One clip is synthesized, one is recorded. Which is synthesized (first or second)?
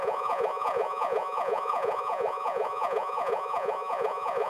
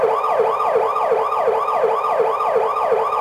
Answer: first